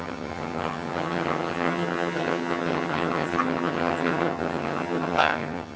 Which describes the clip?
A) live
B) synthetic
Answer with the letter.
B